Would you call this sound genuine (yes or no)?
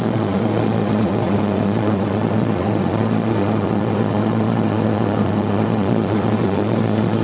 no